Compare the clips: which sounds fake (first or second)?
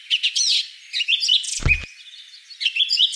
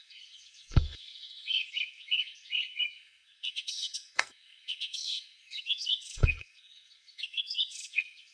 second